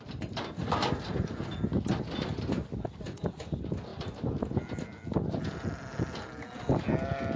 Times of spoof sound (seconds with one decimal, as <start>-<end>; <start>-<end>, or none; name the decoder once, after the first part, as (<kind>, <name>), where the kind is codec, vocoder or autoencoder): none